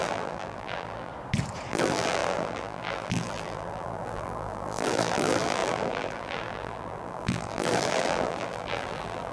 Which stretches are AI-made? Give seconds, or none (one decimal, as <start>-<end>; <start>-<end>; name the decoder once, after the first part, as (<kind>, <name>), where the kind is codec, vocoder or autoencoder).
0.0-1.1 (vocoder, BigVGAN v2); 1.7-9.3